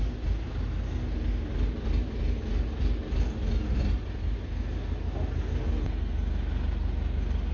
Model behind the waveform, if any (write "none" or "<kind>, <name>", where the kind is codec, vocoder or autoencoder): none